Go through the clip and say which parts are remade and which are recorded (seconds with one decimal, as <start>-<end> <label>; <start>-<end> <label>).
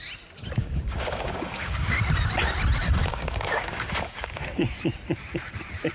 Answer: 0.0-0.6 recorded; 0.6-2.0 remade; 2.0-2.8 recorded; 2.8-4.4 remade; 4.4-5.9 recorded